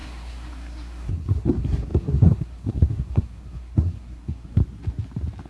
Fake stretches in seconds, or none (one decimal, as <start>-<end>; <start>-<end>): 0.0-4.6